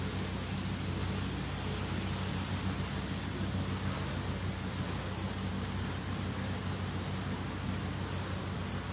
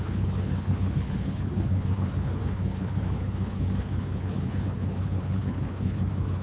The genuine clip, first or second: first